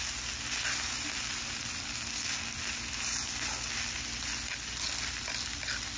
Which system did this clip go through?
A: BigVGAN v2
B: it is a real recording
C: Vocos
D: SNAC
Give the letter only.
B